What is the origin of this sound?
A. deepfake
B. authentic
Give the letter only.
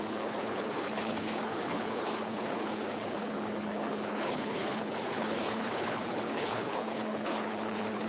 A